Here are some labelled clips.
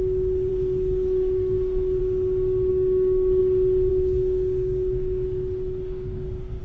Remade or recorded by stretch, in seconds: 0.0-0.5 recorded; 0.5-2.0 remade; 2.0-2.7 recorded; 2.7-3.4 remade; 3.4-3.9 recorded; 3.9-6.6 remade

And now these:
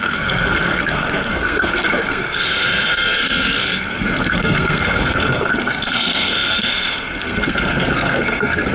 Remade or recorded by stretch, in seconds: 0.0-8.7 remade

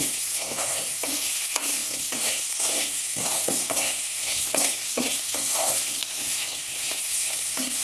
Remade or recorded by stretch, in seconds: 0.0-7.8 remade

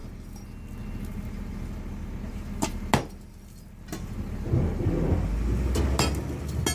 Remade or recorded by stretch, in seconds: 0.0-6.7 recorded

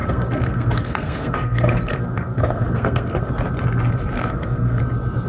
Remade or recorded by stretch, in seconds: 0.0-3.2 remade; 3.2-4.2 recorded; 4.2-4.8 remade; 4.8-5.3 recorded